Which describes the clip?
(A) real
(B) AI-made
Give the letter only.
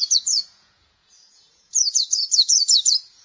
B